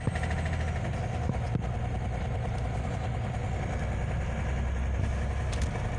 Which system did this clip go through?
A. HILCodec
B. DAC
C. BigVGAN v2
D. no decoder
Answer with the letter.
D